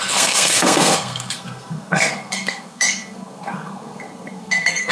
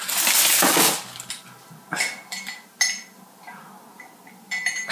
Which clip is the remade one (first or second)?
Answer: first